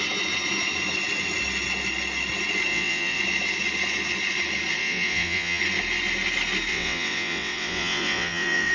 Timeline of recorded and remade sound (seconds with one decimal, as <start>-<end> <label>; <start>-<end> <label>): 0.0-2.7 recorded; 2.7-3.2 remade; 3.2-4.8 recorded; 4.8-5.6 remade; 5.6-6.7 recorded; 6.7-8.7 remade